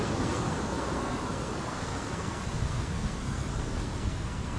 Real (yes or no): no